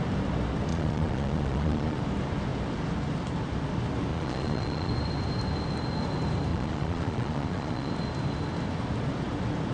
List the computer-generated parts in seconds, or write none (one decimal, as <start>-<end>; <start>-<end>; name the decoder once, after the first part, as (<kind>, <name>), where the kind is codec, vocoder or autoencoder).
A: 0.7-2.0 (vocoder, Vocos); 4.1-4.9; 6.5-7.9